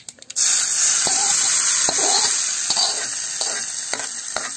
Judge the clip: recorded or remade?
recorded